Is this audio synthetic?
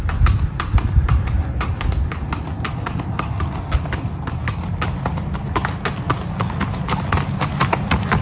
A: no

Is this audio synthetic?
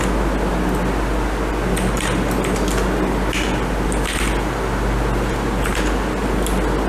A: no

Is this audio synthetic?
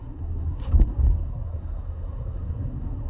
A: yes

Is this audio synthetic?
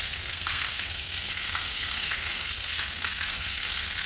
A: yes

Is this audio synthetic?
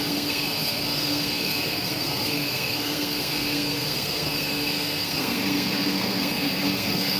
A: yes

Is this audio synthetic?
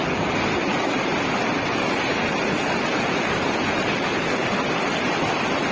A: no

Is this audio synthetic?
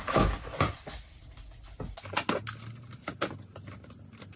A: no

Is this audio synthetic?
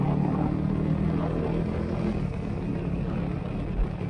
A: no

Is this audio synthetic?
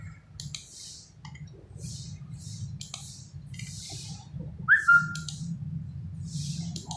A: no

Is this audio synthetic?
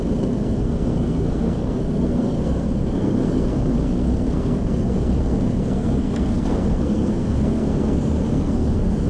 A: yes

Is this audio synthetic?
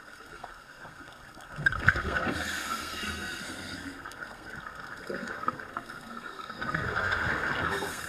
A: yes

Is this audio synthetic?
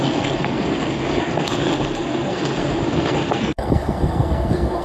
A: yes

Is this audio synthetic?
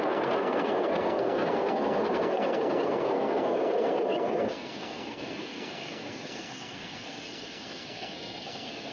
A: yes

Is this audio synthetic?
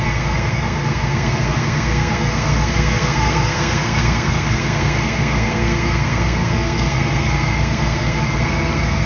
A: yes